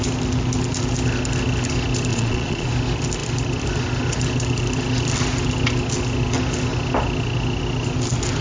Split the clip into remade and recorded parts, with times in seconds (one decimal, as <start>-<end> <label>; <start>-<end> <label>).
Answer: 0.0-2.1 recorded; 2.1-2.7 remade; 2.7-8.4 recorded